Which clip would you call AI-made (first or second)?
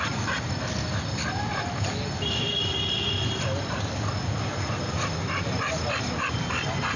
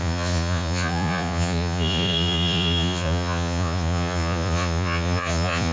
second